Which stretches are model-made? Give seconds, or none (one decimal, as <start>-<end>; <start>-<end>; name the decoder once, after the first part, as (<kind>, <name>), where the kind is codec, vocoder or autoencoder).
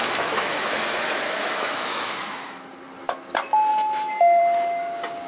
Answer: 0.0-2.7 (autoencoder, DAC-VAE); 3.7-4.4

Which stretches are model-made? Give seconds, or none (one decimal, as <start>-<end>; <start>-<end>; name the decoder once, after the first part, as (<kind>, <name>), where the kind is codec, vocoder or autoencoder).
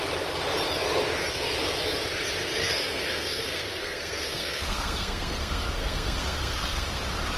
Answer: 2.6-7.0 (codec, SNAC)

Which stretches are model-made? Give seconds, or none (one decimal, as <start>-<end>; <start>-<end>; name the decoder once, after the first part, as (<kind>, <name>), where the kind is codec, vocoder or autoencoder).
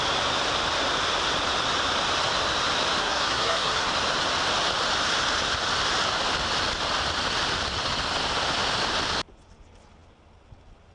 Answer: 3.0-3.9 (codec, SNAC)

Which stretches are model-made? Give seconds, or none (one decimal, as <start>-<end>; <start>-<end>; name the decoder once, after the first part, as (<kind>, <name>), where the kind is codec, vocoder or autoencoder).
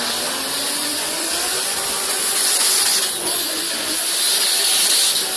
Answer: 0.8-4.0 (vocoder, Vocos)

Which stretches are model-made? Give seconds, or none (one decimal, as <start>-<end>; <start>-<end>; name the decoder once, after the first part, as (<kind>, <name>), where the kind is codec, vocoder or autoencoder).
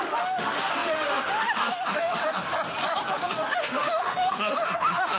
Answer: 0.0-2.4 (autoencoder, DAC-VAE); 3.1-5.2